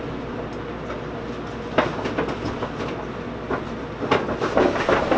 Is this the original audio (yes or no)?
yes